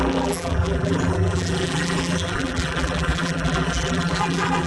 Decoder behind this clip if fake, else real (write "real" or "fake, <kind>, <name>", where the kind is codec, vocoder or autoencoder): fake, vocoder, BigVGAN v2